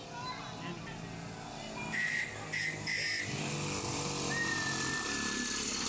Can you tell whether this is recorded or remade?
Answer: recorded